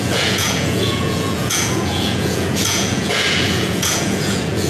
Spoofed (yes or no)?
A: yes